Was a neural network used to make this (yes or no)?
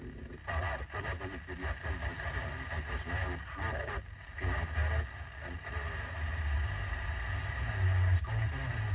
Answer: no